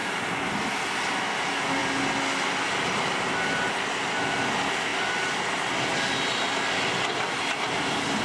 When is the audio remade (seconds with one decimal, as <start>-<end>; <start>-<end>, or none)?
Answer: none